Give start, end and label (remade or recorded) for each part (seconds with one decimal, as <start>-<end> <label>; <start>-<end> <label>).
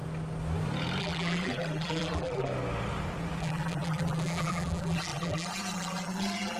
0.0-1.0 recorded; 1.0-2.5 remade; 2.5-3.4 recorded; 3.4-6.6 remade